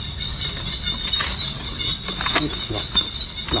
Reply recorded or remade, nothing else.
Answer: recorded